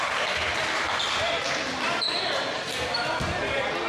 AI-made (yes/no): yes